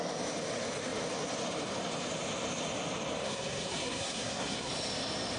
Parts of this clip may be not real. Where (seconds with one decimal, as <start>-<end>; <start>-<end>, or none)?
3.2-4.7